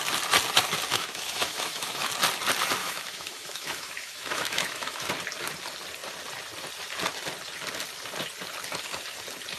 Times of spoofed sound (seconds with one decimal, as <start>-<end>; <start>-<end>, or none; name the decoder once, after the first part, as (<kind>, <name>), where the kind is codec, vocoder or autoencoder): 0.9-2.1 (autoencoder, DAC-VAE); 2.8-5.1